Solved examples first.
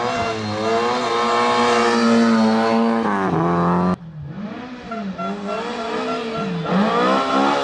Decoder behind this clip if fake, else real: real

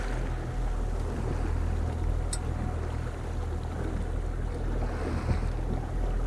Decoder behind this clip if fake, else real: real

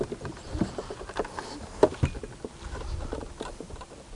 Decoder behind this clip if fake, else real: real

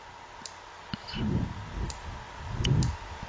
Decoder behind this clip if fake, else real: real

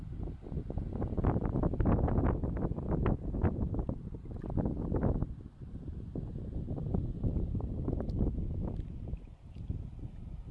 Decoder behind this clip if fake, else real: real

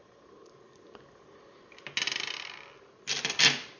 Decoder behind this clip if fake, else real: real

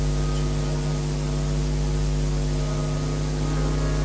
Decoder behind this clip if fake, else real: real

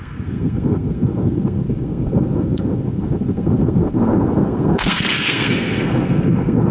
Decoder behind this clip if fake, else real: fake, codec, SNAC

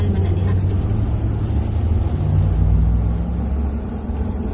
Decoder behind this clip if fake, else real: real